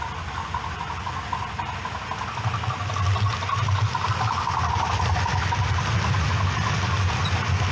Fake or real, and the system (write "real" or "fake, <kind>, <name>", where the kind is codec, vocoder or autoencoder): real